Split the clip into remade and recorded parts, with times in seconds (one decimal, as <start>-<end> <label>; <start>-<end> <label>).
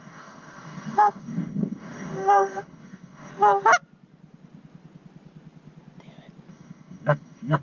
0.0-3.3 remade; 3.3-6.5 recorded; 6.5-7.6 remade